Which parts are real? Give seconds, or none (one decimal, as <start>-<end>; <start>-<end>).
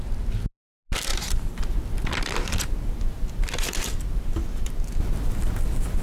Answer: 0.0-1.1; 1.6-6.0